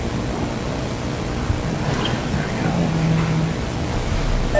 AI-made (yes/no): no